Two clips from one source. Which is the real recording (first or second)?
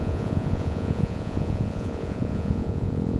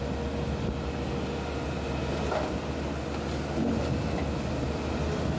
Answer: second